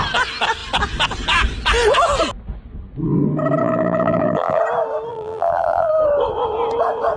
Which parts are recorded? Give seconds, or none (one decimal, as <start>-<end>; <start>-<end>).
0.0-3.6; 4.6-5.1; 5.9-7.2